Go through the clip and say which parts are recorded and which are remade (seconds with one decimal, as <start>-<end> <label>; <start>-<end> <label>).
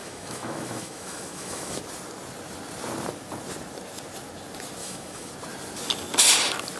0.0-1.8 remade; 1.8-4.8 recorded; 4.8-5.3 remade; 5.3-6.8 recorded